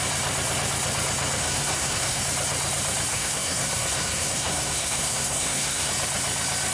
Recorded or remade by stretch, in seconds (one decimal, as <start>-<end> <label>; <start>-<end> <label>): 0.0-1.4 recorded; 1.4-2.2 remade; 2.2-3.1 recorded; 3.1-5.9 remade; 5.9-6.7 recorded